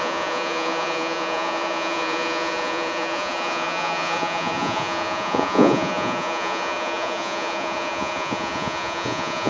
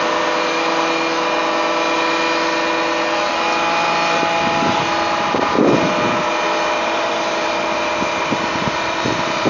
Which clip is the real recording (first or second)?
second